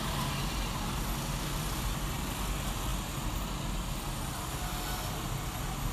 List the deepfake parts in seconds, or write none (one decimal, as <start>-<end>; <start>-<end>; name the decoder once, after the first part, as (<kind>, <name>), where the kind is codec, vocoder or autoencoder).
none